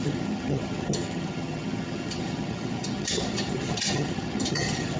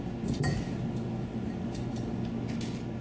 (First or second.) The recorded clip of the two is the second